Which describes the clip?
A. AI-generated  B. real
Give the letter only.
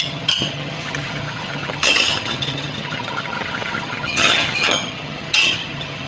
A